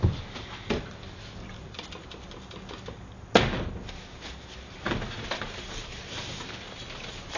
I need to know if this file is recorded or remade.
recorded